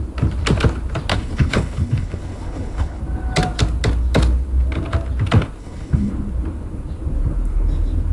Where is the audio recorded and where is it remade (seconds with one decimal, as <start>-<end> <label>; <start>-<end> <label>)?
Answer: 0.0-1.1 recorded; 1.1-3.0 remade; 3.0-5.6 recorded; 5.6-6.1 remade; 6.1-8.1 recorded

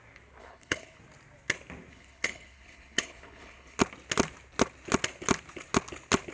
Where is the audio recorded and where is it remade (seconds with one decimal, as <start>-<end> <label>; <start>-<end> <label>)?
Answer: 0.0-0.4 recorded; 0.4-1.0 remade; 1.0-1.9 recorded; 1.9-3.8 remade; 3.8-6.3 recorded

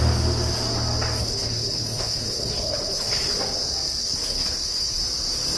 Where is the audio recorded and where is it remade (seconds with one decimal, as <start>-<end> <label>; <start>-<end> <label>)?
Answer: 0.0-1.2 recorded; 1.2-3.4 remade; 3.4-4.0 recorded; 4.0-5.0 remade; 5.0-5.6 recorded